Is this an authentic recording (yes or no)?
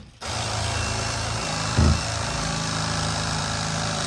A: no